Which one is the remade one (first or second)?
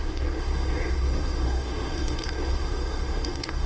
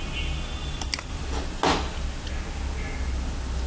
first